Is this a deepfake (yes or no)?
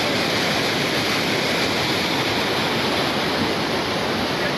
no